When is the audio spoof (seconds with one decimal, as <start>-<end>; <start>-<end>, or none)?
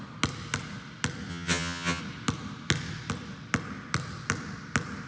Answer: 1.3-2.0